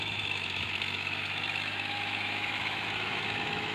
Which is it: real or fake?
fake